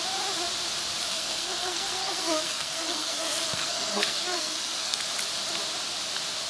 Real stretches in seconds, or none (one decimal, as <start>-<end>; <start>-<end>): 0.0-1.1; 5.0-6.5